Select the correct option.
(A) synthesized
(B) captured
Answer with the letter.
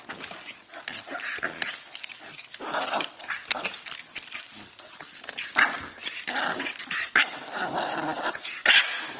B